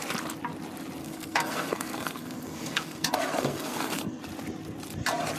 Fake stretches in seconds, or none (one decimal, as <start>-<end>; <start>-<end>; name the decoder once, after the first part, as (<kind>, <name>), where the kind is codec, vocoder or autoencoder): 1.0-4.2 (codec, SNAC)